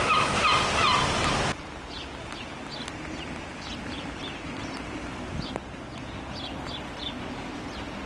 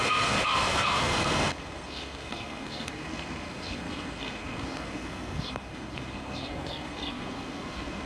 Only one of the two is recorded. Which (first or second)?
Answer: first